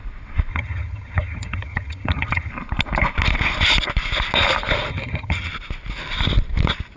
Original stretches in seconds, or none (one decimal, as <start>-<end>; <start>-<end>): 0.0-0.5; 2.5-4.9; 5.5-7.0

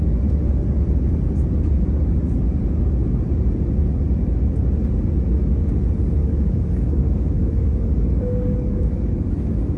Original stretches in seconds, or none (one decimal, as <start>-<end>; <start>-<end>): 0.0-6.2; 9.3-9.8

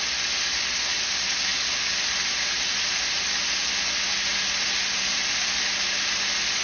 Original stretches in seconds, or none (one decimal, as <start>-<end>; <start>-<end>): 0.0-6.6

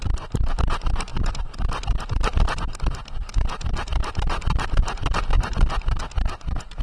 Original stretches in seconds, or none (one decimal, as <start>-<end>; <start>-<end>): 0.0-6.8

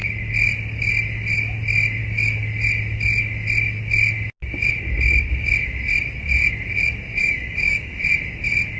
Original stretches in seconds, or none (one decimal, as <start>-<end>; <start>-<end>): 0.0-7.2; 8.0-8.8

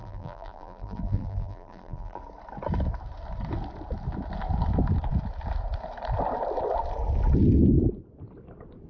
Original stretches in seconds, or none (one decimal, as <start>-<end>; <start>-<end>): 2.2-8.9

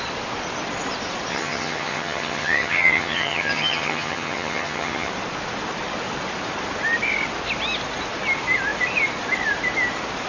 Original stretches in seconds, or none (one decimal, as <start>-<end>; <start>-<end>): 0.0-1.3; 5.1-10.3

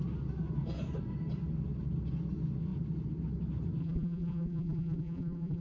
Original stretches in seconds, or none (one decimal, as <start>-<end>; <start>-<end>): 0.0-3.8